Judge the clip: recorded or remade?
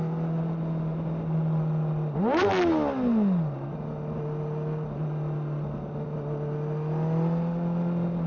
recorded